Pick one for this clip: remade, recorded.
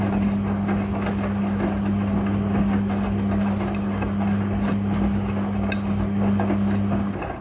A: recorded